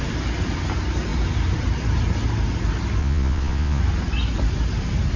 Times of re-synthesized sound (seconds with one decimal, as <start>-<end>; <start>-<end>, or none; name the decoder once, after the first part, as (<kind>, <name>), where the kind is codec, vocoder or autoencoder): 3.0-3.8 (vocoder, Vocos)